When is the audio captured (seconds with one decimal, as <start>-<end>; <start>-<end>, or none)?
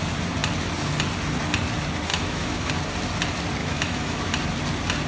0.0-2.1; 2.7-3.6; 4.2-5.1